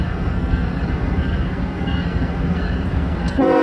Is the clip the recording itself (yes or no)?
no